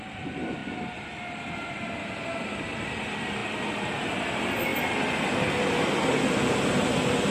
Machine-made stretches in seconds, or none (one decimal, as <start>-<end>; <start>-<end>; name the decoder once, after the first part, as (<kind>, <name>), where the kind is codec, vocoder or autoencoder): none